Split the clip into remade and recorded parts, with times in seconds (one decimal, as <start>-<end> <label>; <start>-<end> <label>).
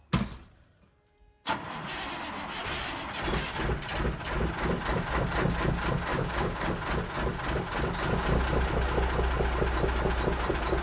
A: 0.0-6.1 recorded; 6.1-6.7 remade; 6.7-10.8 recorded